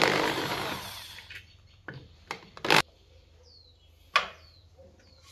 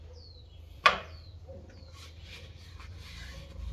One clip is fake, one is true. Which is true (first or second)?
first